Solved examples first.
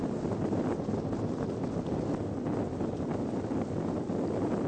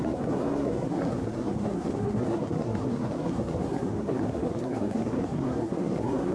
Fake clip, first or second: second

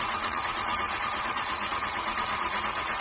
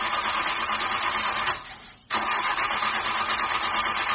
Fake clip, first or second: first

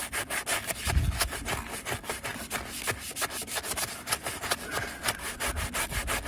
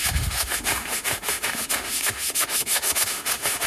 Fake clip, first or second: second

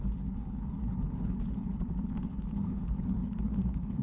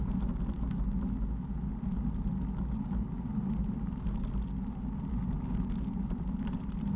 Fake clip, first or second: first